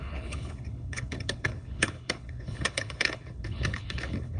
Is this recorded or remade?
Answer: remade